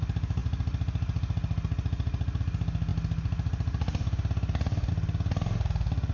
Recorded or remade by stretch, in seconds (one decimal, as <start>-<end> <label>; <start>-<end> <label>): 0.0-6.1 recorded